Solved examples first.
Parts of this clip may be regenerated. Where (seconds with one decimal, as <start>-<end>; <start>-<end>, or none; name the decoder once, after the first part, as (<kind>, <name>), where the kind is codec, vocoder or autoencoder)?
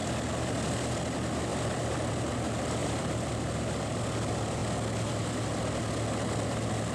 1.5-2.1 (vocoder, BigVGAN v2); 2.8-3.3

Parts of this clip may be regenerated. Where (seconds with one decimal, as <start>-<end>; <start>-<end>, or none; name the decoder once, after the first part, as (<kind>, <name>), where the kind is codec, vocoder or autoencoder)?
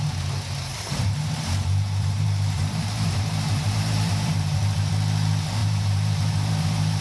0.7-4.9 (vocoder, BigVGAN v2); 5.6-7.0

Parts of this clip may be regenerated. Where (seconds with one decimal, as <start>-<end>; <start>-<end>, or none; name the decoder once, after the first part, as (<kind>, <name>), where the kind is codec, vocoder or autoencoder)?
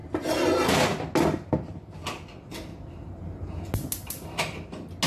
none